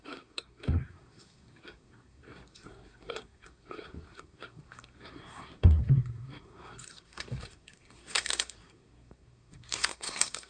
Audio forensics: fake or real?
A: fake